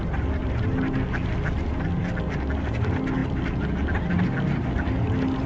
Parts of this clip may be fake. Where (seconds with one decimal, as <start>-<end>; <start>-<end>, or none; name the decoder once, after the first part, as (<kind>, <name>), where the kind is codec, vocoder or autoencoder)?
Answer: none